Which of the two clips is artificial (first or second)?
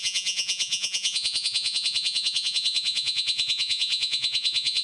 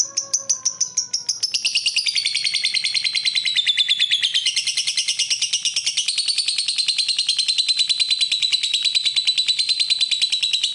first